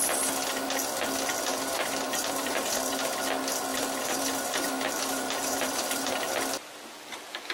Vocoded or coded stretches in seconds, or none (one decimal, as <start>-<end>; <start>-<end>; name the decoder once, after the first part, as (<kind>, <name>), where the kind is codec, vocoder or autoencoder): 1.5-2.9 (vocoder, BigVGAN v2); 3.7-6.3

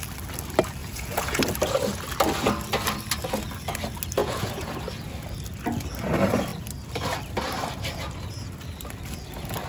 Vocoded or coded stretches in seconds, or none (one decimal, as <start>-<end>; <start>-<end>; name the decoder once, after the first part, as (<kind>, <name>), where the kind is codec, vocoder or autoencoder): 0.8-1.4 (vocoder, Vocos); 4.2-4.7

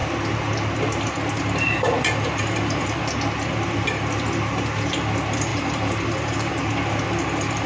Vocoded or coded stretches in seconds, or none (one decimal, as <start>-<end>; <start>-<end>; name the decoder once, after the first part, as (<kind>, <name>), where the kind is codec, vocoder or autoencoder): 5.5-6.6 (vocoder, BigVGAN v2)

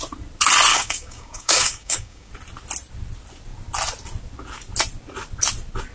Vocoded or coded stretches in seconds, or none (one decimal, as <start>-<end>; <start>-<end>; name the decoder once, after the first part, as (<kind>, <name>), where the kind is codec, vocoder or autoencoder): 0.7-2.3 (codec, DAC)